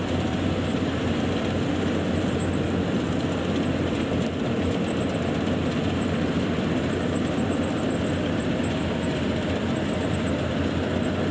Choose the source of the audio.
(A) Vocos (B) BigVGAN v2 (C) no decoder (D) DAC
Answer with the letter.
C